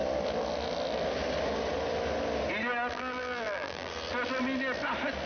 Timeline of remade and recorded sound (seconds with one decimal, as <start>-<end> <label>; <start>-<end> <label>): 0.0-2.9 recorded; 2.9-3.9 remade; 3.9-5.3 recorded